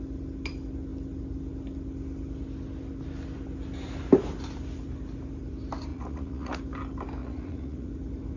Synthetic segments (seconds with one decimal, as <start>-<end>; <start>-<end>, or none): 5.9-6.6; 7.2-7.9